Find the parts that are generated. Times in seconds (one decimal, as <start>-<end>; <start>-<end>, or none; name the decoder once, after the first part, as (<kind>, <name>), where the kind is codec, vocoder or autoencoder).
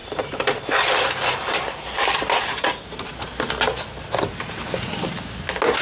0.0-3.5 (vocoder, BigVGAN v2)